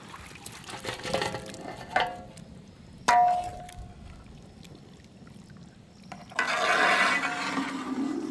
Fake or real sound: real